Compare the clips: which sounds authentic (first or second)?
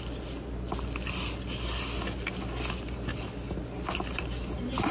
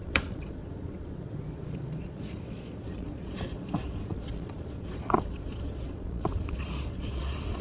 first